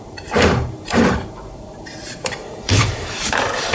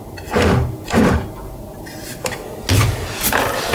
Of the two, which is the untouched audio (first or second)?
second